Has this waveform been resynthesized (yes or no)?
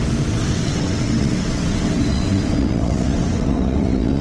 yes